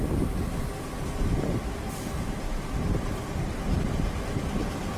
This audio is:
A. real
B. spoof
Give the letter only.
B